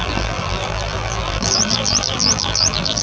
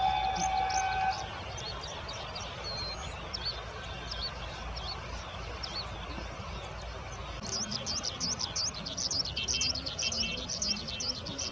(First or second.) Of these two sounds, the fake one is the first